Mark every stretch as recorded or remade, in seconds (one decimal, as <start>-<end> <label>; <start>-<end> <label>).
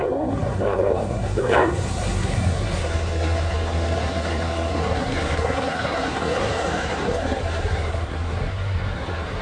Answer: 0.0-9.4 remade